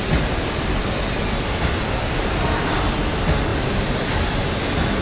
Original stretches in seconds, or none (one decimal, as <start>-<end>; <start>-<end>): 0.0-5.0